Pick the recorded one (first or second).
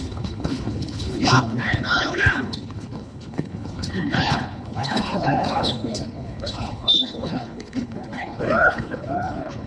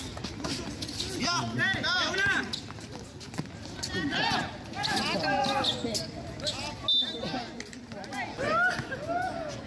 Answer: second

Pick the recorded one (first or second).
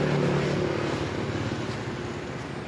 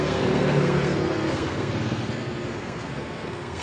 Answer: first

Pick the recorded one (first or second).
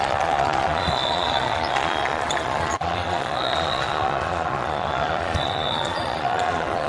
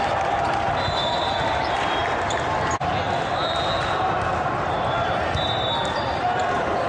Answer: second